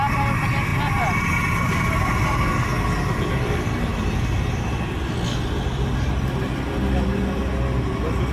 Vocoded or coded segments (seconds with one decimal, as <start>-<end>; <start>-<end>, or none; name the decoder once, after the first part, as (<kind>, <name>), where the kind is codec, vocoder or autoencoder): none